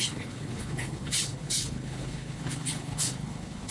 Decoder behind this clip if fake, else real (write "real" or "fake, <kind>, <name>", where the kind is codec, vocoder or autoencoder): fake, codec, HILCodec